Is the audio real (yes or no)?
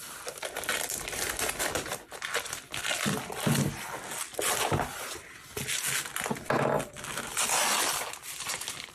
yes